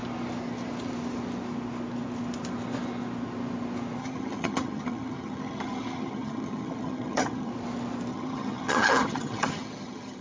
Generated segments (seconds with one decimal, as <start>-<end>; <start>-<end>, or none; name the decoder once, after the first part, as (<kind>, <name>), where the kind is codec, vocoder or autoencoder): 4.0-7.5 (vocoder, HiFi-GAN); 8.1-10.2